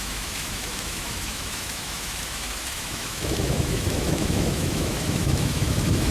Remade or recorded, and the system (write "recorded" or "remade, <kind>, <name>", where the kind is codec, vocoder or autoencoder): remade, autoencoder, DAC-VAE